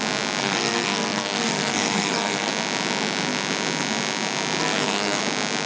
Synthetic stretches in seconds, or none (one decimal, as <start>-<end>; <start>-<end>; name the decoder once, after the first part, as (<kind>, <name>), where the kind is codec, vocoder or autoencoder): 0.4-2.5 (codec, SNAC); 4.6-5.2